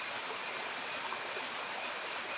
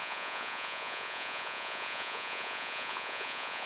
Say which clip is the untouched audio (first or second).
first